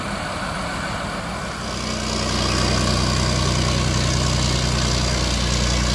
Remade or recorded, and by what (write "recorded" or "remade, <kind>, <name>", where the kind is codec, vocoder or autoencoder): recorded